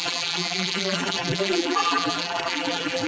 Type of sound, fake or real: fake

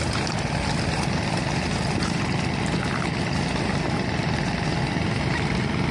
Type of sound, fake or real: real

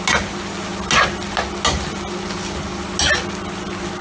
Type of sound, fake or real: real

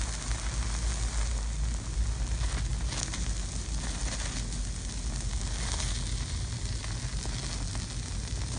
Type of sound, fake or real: real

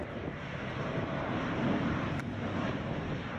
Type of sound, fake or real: fake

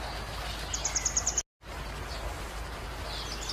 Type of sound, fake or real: real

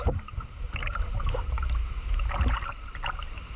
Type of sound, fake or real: fake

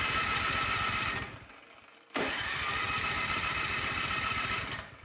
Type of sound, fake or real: fake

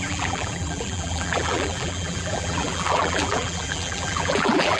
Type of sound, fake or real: fake